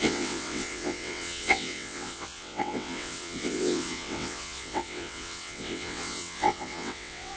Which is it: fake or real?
fake